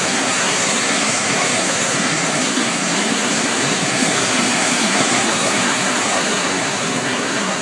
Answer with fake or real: fake